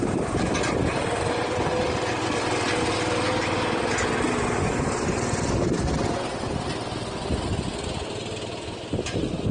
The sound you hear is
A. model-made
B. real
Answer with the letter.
B